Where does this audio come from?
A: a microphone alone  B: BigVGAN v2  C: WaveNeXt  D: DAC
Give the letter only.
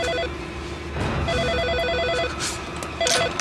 A